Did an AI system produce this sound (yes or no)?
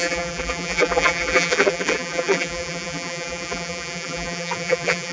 yes